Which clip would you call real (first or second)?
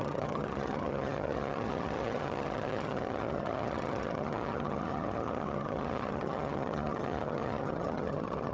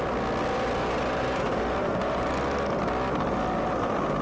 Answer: second